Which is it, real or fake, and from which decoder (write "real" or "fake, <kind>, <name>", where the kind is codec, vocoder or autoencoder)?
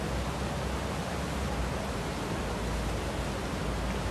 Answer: real